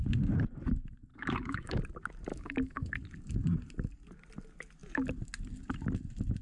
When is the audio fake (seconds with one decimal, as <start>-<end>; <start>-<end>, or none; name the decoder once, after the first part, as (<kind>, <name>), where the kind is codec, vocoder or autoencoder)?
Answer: 1.1-1.8 (autoencoder, DAC-VAE); 2.3-2.9